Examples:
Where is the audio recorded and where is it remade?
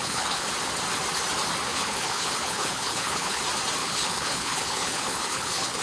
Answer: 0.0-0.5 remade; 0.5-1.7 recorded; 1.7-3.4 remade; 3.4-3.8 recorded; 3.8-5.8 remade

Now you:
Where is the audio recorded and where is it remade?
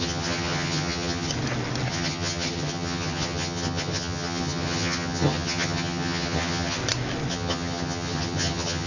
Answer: 0.0-1.3 remade; 1.3-1.9 recorded; 1.9-6.8 remade; 6.8-7.3 recorded; 7.3-8.9 remade